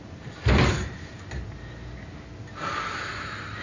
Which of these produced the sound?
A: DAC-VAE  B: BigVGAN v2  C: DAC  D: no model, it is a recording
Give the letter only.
D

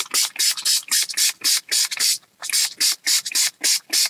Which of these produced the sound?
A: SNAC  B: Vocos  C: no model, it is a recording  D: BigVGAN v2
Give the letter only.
C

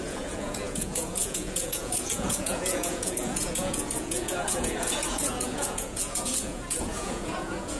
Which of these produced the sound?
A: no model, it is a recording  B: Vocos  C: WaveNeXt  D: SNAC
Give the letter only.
B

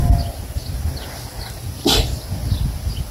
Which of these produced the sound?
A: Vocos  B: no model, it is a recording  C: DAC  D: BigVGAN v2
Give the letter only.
B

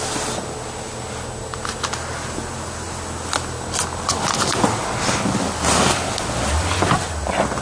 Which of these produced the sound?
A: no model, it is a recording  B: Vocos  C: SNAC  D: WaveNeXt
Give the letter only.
A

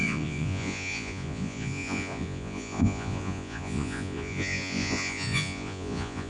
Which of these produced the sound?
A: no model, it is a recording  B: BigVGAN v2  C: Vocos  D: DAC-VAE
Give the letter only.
C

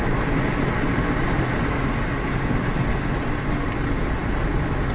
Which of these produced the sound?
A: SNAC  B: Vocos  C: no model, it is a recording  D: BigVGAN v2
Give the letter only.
C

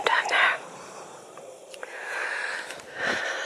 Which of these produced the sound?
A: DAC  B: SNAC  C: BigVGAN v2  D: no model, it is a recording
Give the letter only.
C